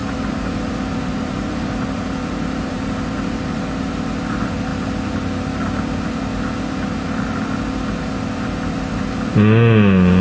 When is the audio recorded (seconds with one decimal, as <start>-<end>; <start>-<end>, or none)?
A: 3.9-10.2